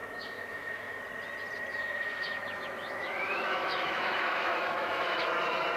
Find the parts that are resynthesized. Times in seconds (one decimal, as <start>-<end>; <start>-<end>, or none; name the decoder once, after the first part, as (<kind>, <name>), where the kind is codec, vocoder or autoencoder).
0.0-1.0 (autoencoder, DAC-VAE); 1.7-5.2